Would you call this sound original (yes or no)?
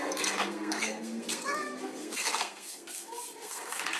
no